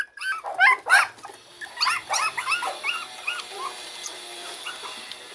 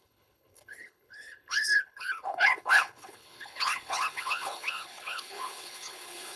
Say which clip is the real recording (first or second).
first